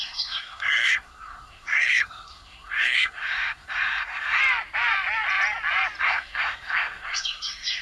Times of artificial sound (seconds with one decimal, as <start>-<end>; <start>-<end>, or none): 0.0-4.4; 6.0-7.8

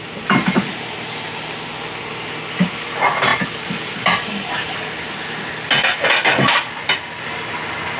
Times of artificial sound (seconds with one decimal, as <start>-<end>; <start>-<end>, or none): none

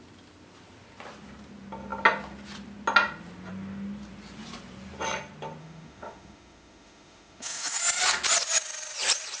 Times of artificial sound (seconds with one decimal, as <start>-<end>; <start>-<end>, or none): 5.6-7.8

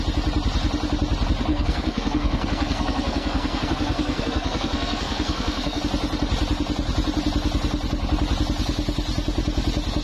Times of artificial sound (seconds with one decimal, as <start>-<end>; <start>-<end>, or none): 1.5-5.8

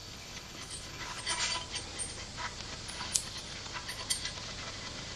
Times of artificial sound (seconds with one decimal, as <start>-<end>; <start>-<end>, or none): 0.0-1.2